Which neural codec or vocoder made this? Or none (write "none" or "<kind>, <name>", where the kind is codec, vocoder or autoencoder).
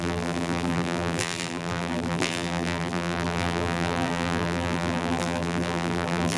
vocoder, BigVGAN v2